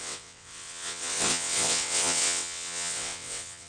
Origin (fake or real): fake